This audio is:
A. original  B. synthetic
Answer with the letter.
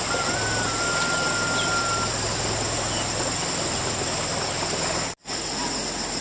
A